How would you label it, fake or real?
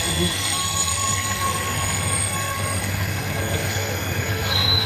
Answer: fake